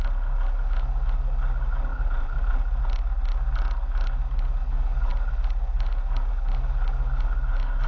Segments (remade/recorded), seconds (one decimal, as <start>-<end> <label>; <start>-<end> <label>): 0.0-1.9 recorded; 1.9-2.8 remade; 2.8-7.9 recorded